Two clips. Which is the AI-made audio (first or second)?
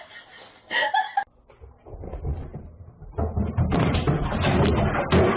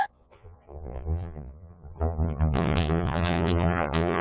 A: second